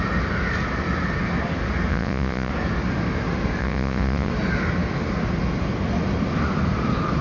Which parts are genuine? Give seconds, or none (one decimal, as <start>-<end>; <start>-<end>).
0.0-1.9; 2.5-3.6; 4.3-7.2